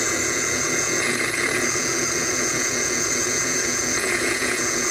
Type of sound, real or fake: fake